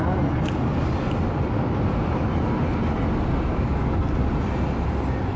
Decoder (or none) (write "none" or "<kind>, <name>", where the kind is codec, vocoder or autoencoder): none